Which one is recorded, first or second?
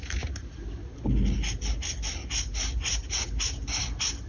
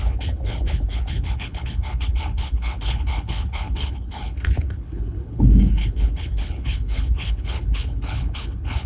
first